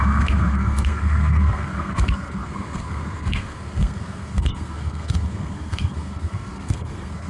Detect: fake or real fake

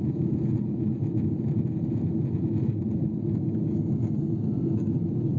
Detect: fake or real real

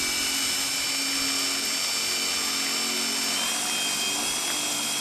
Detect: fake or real real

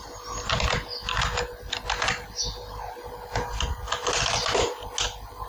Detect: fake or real real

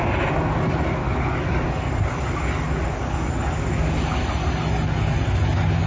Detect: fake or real real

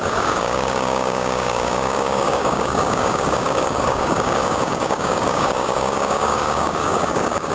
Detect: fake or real fake